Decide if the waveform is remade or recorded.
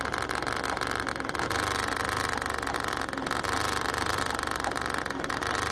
recorded